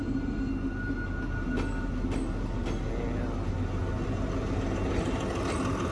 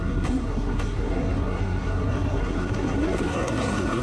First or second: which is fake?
second